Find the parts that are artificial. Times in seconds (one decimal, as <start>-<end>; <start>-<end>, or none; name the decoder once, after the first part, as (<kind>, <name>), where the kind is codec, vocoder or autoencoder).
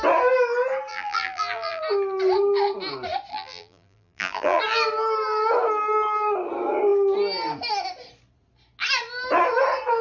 0.9-1.8 (vocoder, BigVGAN v2); 3.3-4.6